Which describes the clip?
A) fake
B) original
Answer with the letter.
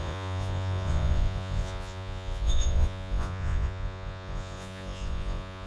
A